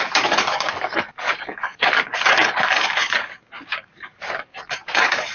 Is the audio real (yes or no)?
no